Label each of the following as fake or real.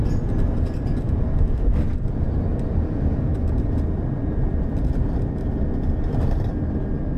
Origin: real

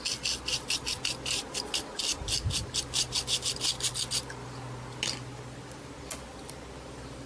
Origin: real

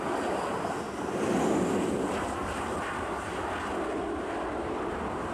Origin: real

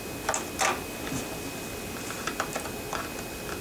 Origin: real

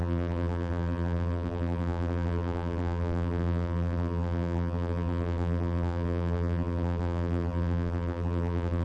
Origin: fake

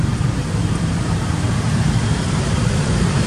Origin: fake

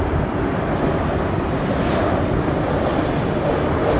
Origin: fake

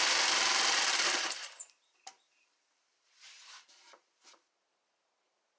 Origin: fake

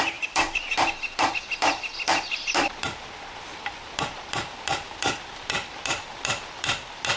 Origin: fake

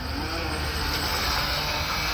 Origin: real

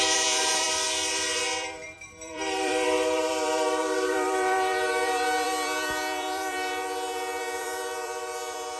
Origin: fake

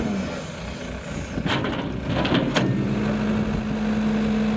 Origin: real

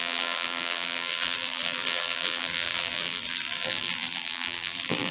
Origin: fake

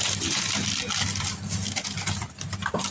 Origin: real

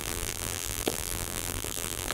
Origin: fake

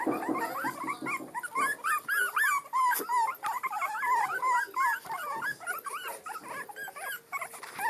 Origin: real